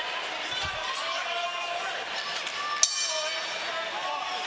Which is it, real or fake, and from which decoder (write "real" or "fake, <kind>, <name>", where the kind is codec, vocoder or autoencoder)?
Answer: real